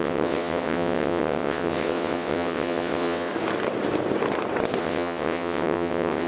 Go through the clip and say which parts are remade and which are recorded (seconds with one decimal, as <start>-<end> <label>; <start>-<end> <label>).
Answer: 0.0-3.3 remade; 3.3-4.8 recorded; 4.8-6.3 remade